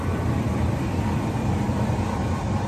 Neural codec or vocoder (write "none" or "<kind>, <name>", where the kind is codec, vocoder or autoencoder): vocoder, BigVGAN v2